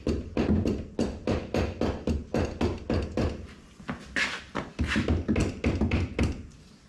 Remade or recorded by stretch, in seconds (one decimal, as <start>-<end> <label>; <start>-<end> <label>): 0.0-6.9 recorded